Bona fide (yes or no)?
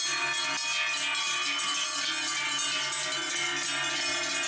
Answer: yes